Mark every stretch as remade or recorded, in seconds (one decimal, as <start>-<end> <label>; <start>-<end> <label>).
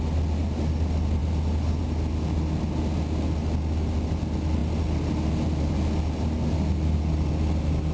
0.0-7.9 recorded